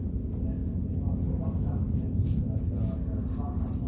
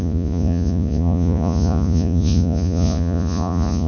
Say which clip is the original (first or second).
first